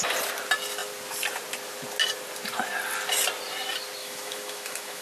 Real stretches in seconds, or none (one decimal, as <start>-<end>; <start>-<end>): 0.0-4.0